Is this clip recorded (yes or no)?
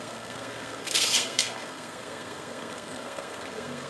no